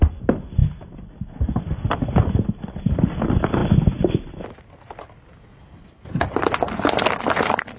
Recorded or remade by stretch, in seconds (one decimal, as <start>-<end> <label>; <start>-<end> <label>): 0.0-7.8 recorded